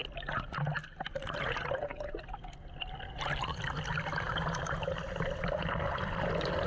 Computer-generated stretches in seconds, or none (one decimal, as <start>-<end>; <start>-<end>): none

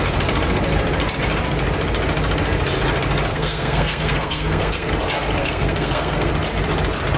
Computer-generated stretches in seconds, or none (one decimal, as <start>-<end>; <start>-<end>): 3.3-4.9; 5.4-6.3

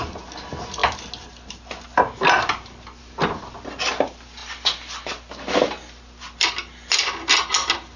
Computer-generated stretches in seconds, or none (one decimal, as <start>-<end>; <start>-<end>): none

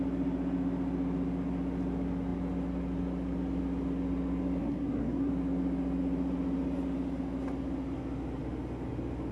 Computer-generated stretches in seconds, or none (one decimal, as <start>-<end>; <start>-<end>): 4.6-5.3

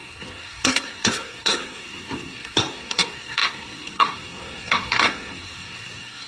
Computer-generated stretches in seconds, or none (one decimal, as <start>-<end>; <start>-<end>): 0.0-6.3

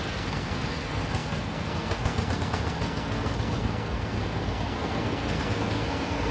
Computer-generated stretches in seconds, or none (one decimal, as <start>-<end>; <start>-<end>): 0.0-6.3

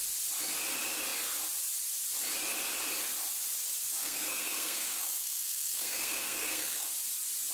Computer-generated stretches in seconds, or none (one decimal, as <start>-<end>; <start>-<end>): 4.0-6.9

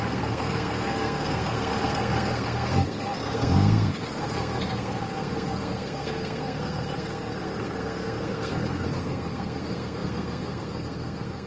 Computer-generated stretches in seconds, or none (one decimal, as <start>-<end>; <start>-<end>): 0.0-11.5